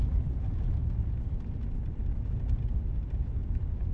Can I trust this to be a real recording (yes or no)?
yes